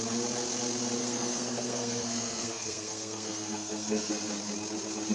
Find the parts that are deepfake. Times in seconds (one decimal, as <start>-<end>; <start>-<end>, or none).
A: 1.0-4.1